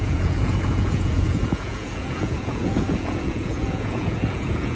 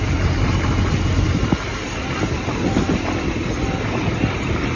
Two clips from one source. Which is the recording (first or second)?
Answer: second